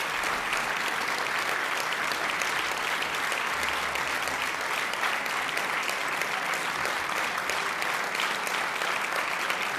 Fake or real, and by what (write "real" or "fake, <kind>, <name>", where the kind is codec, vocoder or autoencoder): real